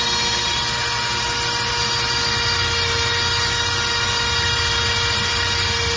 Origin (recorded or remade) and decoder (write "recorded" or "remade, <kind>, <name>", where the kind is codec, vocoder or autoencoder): recorded